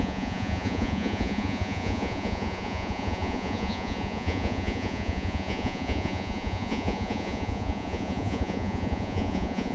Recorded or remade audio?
remade